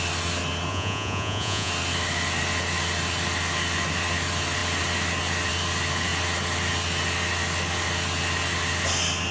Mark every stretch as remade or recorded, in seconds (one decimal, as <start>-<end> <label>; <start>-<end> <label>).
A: 0.0-0.7 recorded; 0.7-1.7 remade; 1.7-9.3 recorded